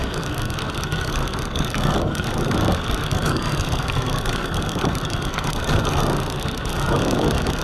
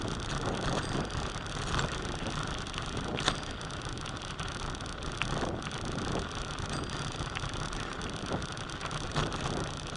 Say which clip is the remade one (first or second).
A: first